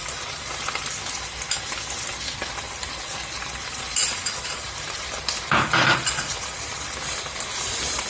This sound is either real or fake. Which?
real